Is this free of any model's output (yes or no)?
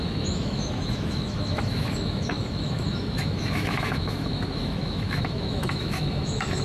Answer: no